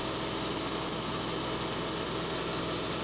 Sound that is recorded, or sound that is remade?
recorded